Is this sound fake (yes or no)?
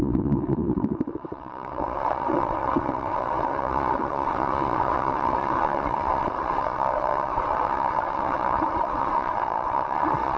yes